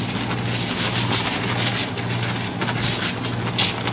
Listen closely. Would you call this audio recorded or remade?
recorded